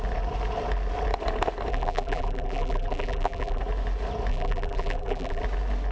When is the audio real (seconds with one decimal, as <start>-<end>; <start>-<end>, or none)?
0.0-1.7; 3.6-4.3; 5.4-5.9